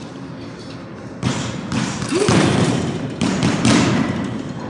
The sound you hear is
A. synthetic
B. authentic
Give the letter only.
A